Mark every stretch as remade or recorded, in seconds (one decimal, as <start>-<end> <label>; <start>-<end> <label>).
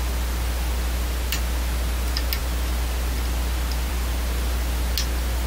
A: 0.0-5.5 recorded